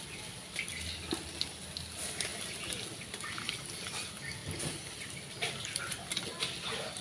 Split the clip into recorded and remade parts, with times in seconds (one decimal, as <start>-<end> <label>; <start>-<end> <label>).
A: 0.0-7.0 recorded